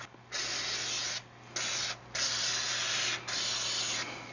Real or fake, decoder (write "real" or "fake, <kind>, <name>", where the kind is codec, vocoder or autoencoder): real